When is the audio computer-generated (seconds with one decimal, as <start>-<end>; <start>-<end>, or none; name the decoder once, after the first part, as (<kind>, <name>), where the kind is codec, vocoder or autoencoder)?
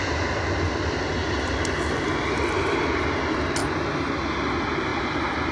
4.9-5.5 (vocoder, BigVGAN v2)